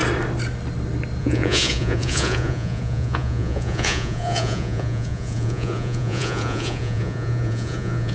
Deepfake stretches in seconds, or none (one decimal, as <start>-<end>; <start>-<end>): 1.2-8.1